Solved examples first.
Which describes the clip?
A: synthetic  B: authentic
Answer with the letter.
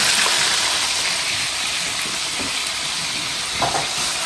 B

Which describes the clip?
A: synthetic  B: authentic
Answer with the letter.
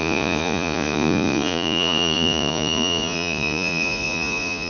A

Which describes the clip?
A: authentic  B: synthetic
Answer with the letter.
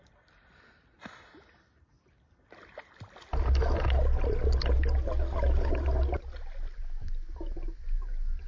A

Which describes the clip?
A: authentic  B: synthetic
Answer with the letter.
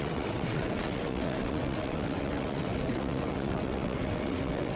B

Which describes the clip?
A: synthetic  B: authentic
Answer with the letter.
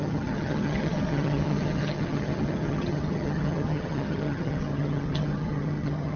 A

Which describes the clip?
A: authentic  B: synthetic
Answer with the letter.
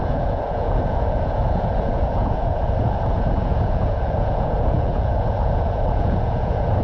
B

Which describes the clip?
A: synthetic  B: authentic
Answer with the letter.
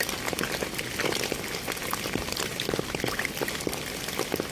B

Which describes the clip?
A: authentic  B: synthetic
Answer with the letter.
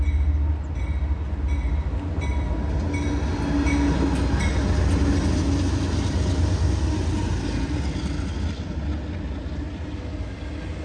A